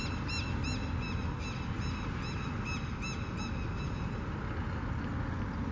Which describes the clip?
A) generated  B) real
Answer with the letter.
B